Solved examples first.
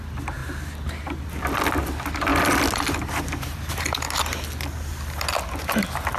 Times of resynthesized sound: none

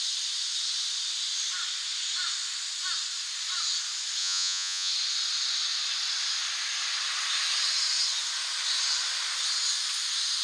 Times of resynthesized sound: 4.2-4.9 (vocoder, Vocos)

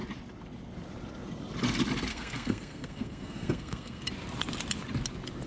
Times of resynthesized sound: 2.1-4.0 (codec, SNAC)

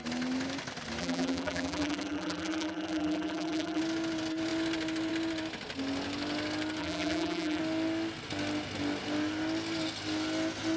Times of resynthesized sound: 1.0-3.8 (vocoder, BigVGAN v2); 6.8-7.6

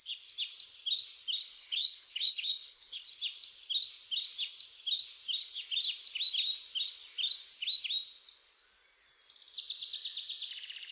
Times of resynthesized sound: 1.5-3.1 (codec, HILCodec)

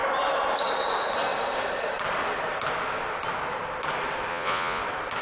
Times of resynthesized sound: 4.3-4.8 (vocoder, Vocos)

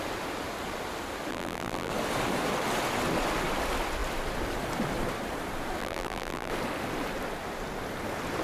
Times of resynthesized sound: 1.3-1.9 (vocoder, BigVGAN v2); 5.8-6.5

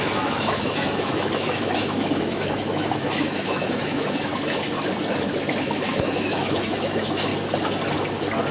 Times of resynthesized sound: 0.0-4.3 (autoencoder, DAC-VAE); 5.6-7.3